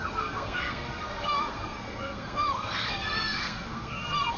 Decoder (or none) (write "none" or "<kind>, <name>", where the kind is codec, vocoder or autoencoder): codec, SNAC